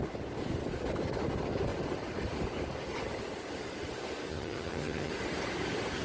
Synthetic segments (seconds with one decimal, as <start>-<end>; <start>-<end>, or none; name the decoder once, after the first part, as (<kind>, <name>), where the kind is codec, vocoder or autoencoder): 4.3-5.1 (vocoder, HiFi-GAN)